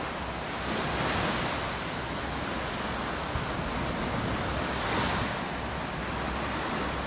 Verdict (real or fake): real